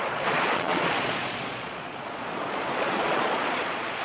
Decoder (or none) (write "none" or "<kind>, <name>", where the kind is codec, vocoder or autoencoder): vocoder, Vocos